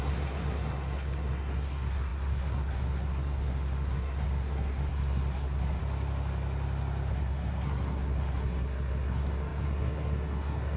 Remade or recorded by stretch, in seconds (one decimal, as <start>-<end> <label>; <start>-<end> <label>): 0.0-5.8 remade; 5.8-7.1 recorded; 7.1-10.8 remade